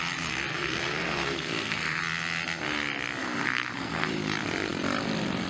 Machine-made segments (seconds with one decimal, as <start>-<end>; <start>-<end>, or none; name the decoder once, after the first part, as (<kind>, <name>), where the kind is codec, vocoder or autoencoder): 0.5-2.0 (codec, SNAC); 3.2-4.1